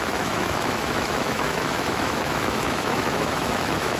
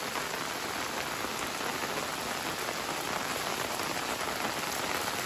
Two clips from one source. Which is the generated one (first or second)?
first